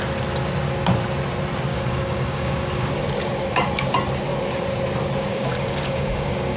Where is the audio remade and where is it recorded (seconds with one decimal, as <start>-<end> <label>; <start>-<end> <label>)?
0.0-1.7 recorded; 1.7-3.0 remade; 3.0-5.3 recorded; 5.3-6.6 remade